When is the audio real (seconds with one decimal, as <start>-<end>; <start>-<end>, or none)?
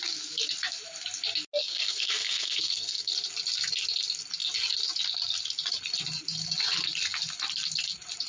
0.0-1.6; 3.1-8.3